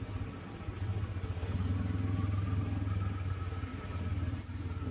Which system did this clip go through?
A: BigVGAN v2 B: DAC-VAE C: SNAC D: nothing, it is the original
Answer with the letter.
D